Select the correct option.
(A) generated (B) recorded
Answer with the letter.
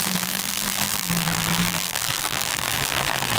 A